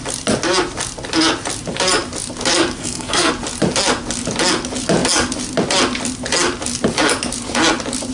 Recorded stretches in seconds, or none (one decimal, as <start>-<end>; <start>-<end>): 0.0-2.8; 3.3-8.1